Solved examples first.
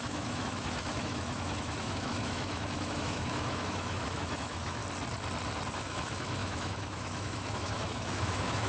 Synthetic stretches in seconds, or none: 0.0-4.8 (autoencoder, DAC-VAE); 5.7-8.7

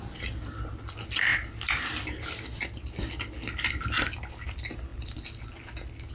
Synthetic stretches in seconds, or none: none

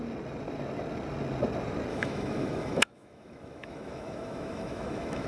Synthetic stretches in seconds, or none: 1.9-5.3 (autoencoder, DAC-VAE)

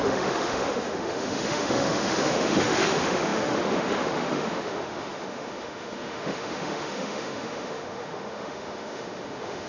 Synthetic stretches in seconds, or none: 0.0-9.7 (autoencoder, DAC-VAE)

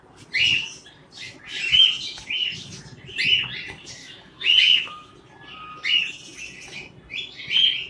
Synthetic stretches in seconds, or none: 4.0-5.1 (autoencoder, DAC-VAE)

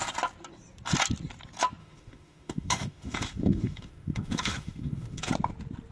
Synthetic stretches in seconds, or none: 1.8-5.3 (autoencoder, DAC-VAE)

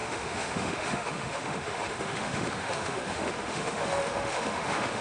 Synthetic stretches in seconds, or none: 0.0-5.0 (autoencoder, DAC-VAE)

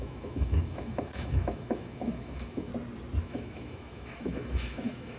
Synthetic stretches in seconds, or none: 0.0-2.7 (autoencoder, DAC-VAE); 3.2-5.2